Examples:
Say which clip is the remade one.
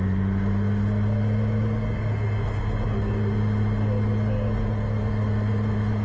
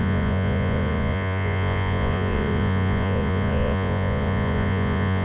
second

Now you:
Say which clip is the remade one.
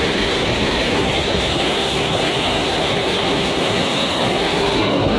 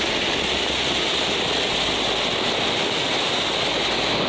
first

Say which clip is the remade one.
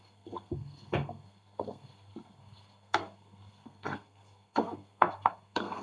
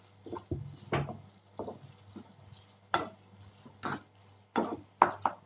first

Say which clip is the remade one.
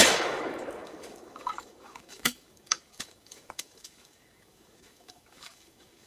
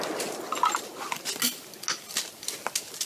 first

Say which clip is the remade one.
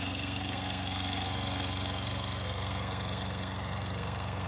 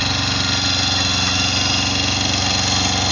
first